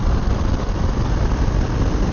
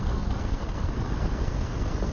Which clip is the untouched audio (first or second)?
first